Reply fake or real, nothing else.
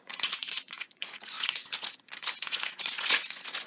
fake